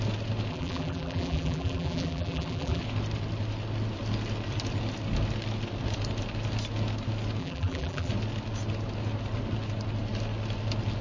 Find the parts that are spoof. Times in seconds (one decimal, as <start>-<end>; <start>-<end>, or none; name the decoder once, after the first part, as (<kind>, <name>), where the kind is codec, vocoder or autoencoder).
0.5-2.8 (vocoder, BigVGAN v2); 7.4-8.1